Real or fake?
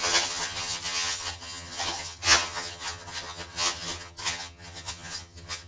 fake